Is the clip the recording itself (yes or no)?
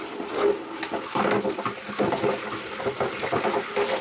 yes